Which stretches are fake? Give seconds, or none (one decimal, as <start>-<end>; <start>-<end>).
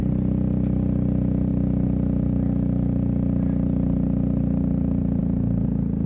none